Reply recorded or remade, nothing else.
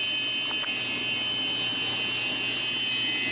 recorded